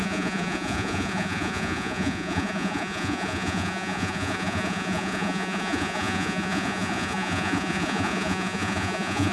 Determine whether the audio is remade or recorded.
remade